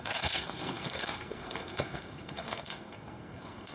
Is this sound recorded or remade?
remade